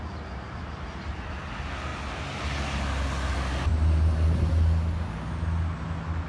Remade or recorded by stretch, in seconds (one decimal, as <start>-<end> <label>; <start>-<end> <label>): 0.0-6.3 recorded